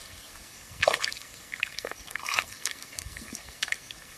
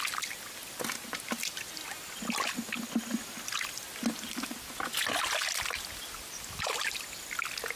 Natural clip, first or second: second